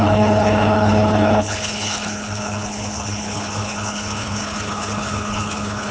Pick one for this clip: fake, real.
fake